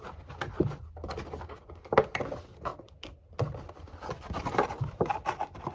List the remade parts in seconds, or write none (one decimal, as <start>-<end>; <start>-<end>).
none

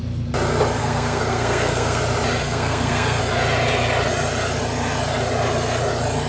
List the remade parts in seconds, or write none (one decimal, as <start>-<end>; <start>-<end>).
0.8-2.0; 2.4-3.2